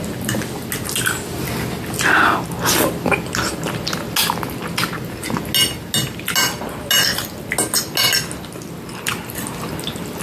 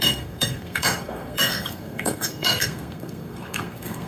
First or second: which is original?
first